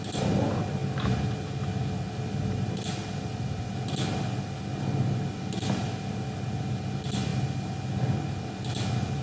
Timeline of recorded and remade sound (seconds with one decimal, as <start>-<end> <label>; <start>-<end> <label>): 0.0-9.2 recorded